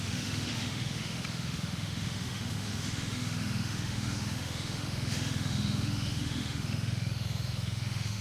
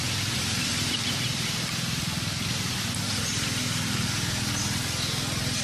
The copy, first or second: first